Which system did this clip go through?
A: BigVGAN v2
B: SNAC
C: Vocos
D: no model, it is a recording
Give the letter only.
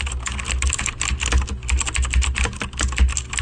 D